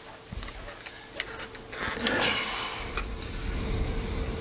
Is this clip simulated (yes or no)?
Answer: no